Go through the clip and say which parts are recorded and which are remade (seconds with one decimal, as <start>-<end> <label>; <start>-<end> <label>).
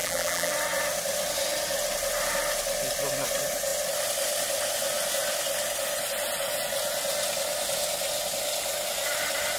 0.0-0.5 remade; 0.5-9.6 recorded